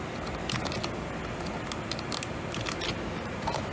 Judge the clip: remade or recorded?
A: recorded